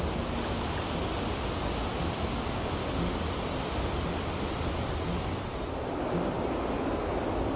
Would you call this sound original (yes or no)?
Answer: yes